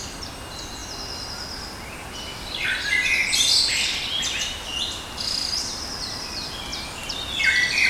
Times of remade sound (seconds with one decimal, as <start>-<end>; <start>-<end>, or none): none